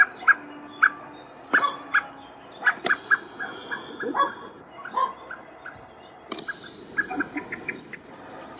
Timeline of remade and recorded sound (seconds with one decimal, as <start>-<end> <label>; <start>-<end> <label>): 0.0-8.6 recorded